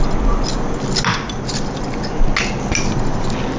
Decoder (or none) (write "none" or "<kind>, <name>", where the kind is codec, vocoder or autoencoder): none